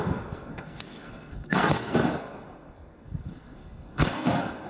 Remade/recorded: remade